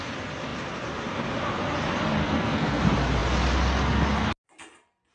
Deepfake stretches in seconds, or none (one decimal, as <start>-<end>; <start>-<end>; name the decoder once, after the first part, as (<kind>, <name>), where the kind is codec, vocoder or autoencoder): 2.2-2.8 (codec, SNAC)

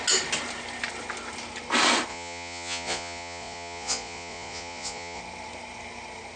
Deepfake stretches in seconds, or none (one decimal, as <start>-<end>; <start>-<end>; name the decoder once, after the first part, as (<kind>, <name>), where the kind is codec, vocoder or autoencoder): 2.1-5.2 (vocoder, Vocos)